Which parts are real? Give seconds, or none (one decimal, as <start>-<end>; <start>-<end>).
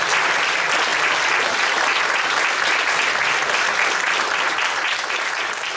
0.0-5.8